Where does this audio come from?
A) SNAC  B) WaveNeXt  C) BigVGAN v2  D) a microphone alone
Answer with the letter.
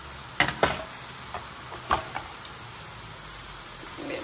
D